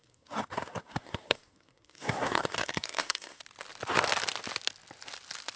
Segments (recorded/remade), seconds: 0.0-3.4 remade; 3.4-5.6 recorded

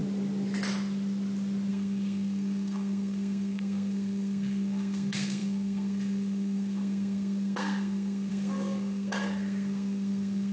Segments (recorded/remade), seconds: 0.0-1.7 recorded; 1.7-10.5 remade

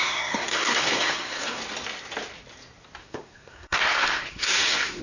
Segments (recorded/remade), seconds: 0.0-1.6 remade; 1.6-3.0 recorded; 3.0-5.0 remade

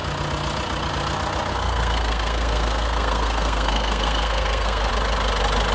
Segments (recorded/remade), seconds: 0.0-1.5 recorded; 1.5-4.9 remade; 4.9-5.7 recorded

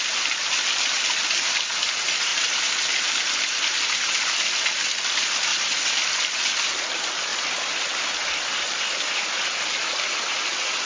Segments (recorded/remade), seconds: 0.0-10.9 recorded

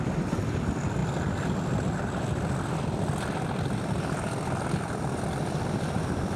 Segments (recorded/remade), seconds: 0.0-6.4 recorded